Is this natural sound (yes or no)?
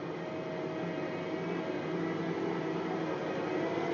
yes